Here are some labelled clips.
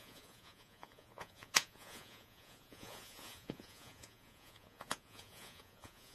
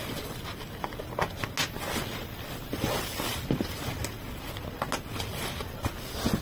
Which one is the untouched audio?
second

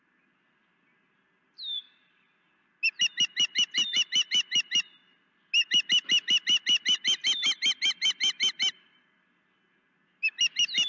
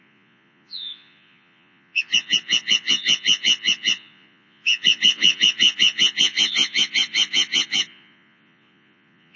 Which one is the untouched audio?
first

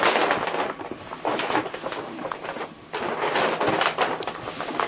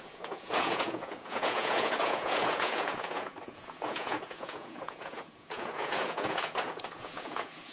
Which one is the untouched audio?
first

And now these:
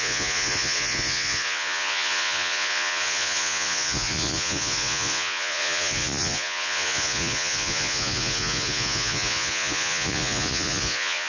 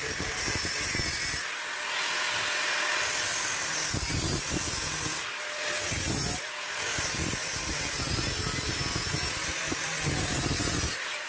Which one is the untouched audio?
second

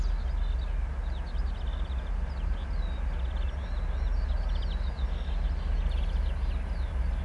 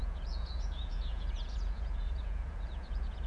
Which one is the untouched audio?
first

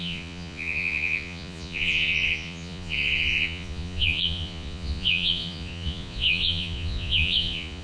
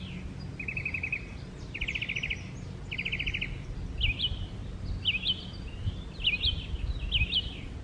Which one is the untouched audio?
second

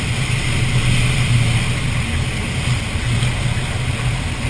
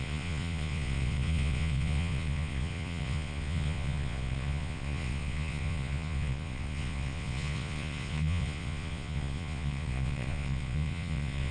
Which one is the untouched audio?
first